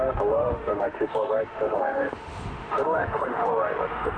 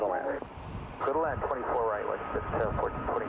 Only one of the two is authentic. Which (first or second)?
second